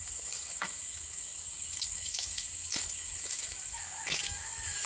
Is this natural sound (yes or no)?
no